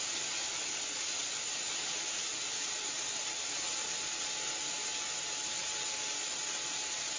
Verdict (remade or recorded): recorded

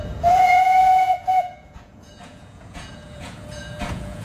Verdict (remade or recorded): remade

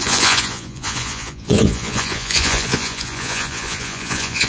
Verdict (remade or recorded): remade